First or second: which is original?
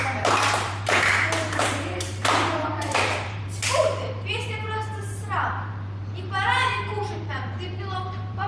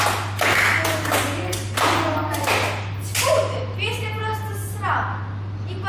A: second